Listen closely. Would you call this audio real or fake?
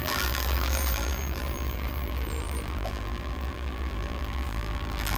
fake